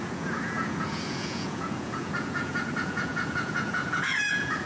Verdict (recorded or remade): remade